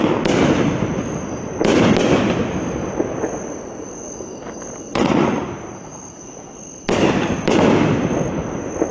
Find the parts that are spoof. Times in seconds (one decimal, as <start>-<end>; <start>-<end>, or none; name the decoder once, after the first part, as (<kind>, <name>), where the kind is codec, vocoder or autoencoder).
4.9-6.5 (vocoder, Vocos)